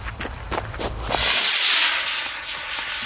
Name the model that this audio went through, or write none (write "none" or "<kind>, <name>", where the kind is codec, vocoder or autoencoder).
none